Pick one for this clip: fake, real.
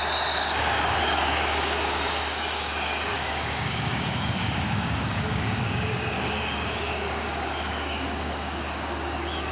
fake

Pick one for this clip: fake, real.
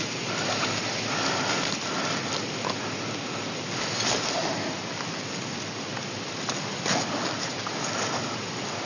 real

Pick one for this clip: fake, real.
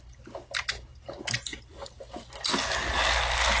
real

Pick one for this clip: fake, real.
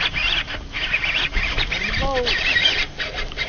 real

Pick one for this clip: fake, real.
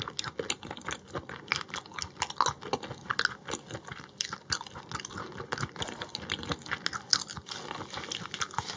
real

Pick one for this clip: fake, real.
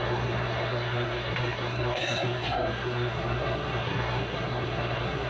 fake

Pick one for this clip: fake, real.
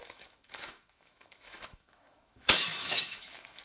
fake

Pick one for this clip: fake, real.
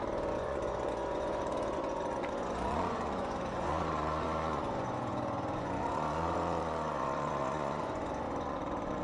fake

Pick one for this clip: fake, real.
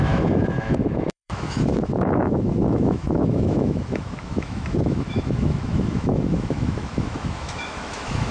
fake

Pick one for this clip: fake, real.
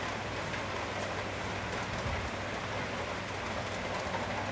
real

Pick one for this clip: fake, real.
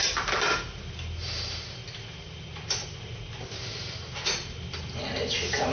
real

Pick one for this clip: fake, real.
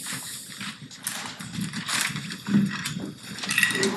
real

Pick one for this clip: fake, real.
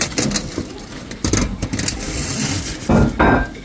real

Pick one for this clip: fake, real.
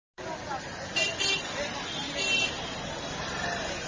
real